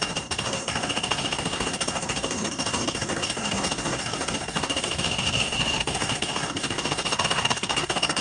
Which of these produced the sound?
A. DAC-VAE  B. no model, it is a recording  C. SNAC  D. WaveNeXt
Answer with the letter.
C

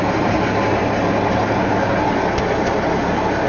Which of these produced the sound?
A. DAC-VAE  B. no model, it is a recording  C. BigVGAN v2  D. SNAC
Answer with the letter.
B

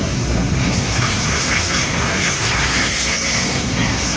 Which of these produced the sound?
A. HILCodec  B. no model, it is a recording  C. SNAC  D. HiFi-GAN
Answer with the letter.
C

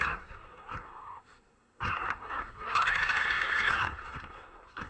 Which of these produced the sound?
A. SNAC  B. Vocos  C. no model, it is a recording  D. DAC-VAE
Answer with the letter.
A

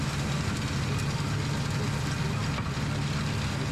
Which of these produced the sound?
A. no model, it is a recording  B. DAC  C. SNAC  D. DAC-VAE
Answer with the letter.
A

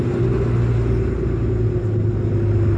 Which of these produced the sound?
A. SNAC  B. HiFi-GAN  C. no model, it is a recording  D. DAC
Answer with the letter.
C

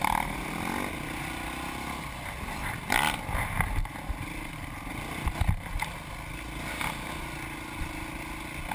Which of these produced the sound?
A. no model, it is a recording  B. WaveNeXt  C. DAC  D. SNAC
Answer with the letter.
A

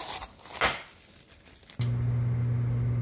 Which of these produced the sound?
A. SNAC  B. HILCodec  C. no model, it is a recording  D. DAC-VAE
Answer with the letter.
C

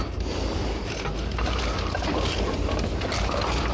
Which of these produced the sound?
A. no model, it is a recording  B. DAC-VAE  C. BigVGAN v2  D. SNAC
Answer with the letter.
A